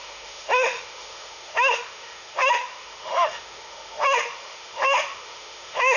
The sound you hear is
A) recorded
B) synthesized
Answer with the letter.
B